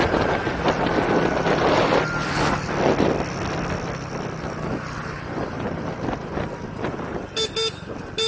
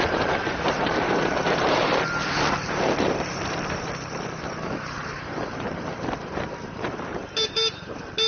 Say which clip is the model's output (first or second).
second